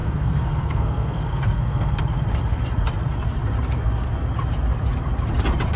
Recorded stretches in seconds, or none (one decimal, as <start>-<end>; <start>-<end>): 2.0-5.8